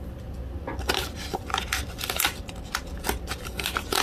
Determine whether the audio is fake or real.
real